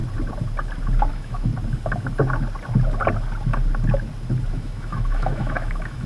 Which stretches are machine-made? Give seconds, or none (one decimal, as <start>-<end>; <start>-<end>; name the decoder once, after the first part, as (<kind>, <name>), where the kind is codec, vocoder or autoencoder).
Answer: 1.1-1.5 (autoencoder, DAC-VAE); 4.5-6.1